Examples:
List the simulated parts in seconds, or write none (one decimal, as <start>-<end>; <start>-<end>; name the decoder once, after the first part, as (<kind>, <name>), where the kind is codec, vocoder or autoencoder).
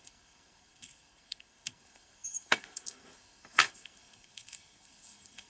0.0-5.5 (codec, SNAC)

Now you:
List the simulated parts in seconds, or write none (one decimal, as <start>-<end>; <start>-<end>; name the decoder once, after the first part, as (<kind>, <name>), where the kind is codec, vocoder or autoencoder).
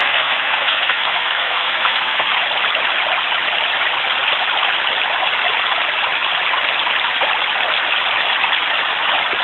0.0-2.3 (codec, SNAC)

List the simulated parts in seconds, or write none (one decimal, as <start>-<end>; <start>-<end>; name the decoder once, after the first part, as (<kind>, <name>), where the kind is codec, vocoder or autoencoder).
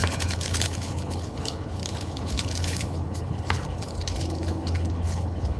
0.0-5.6 (codec, HILCodec)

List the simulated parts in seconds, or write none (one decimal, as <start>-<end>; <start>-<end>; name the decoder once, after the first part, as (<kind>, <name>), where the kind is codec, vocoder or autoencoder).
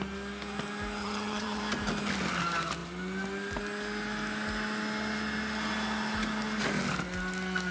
1.0-1.6 (vocoder, HiFi-GAN)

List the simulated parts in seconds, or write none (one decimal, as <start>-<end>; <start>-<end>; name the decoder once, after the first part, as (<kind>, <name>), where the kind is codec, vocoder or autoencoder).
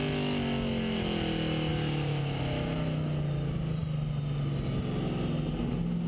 1.7-2.4 (codec, DAC)